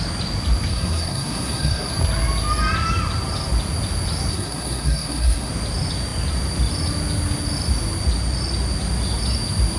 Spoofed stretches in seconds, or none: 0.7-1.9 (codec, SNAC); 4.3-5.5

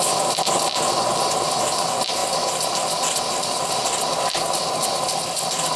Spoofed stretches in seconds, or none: none

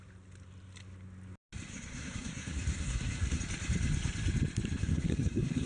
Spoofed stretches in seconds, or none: 1.7-3.4 (codec, SNAC); 4.8-5.7

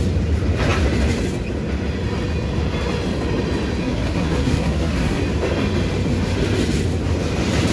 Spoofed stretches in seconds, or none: 3.8-5.2 (codec, SNAC)